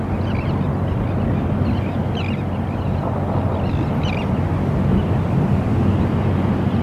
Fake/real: real